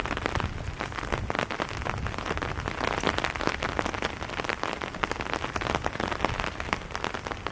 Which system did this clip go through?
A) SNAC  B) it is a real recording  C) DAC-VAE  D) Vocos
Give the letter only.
B